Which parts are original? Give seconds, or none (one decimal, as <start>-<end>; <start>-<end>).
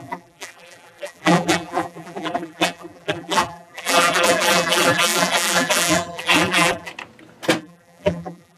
6.9-7.6